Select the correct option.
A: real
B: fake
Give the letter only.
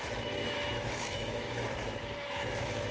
B